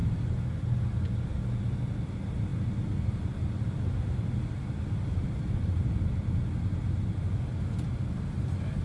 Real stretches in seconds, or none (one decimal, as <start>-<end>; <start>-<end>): 0.0-8.8